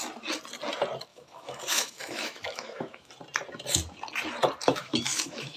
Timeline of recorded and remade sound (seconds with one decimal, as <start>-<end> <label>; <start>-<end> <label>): 0.0-1.1 recorded; 1.1-3.1 remade; 3.1-4.6 recorded; 4.6-5.6 remade